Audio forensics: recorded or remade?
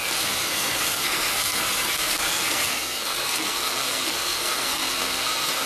remade